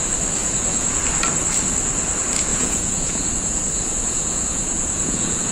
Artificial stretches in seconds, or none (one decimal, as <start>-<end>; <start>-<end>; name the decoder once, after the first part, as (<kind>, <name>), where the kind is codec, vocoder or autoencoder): 0.4-1.0 (vocoder, Vocos); 2.5-5.5